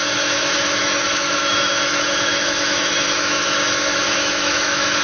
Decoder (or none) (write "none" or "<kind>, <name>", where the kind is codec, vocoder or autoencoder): autoencoder, DAC-VAE